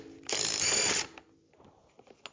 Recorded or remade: recorded